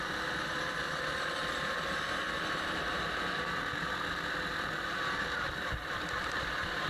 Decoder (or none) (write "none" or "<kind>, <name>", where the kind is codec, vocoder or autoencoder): none